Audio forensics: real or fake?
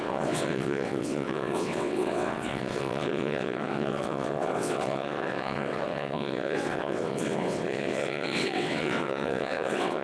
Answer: fake